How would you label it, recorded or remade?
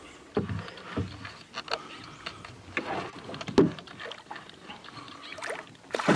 recorded